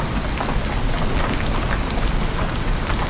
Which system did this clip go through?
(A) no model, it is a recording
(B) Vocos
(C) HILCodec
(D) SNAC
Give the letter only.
A